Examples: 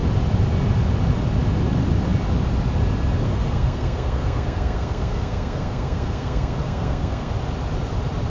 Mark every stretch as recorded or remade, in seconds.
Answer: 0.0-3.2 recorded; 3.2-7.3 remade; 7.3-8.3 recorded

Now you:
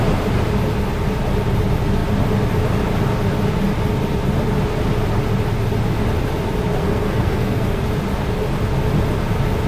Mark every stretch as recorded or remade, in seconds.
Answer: 0.0-6.7 recorded; 6.7-7.8 remade; 7.8-9.7 recorded

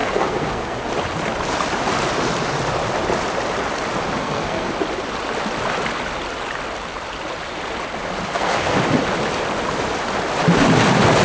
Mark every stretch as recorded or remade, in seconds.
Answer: 0.0-0.9 remade; 0.9-4.2 recorded; 4.2-4.7 remade; 4.7-8.3 recorded; 8.3-8.8 remade; 8.8-11.2 recorded